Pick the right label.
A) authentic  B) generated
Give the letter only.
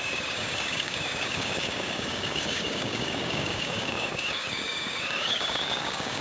B